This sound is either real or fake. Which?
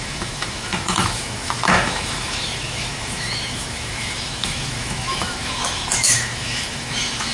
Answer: fake